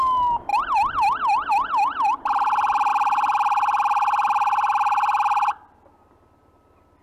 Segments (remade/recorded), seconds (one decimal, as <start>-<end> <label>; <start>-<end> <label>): 0.0-0.5 remade; 0.5-1.5 recorded; 1.5-2.9 remade; 2.9-6.0 recorded; 6.0-7.0 remade